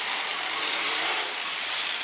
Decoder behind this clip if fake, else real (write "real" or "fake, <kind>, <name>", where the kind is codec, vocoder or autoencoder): fake, vocoder, BigVGAN v2